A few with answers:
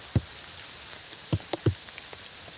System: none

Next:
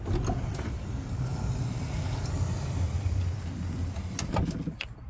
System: none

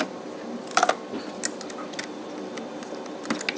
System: none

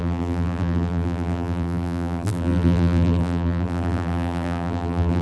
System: vocoder, BigVGAN v2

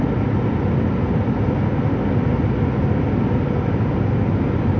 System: none